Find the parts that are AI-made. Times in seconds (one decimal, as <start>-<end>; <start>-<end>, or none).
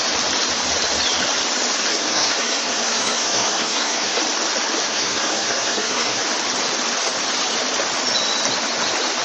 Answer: 1.9-4.2; 4.9-6.2